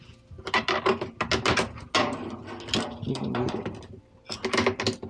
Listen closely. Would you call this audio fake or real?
real